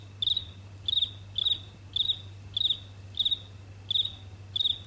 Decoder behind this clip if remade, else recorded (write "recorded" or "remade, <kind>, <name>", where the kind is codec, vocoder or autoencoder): recorded